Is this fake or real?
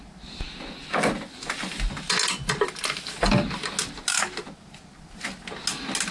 real